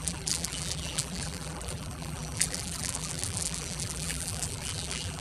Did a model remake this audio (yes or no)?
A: yes